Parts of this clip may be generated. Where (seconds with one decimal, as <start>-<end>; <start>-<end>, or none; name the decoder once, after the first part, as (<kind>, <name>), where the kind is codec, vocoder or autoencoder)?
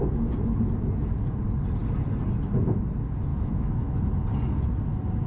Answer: 3.3-4.0 (autoencoder, DAC-VAE)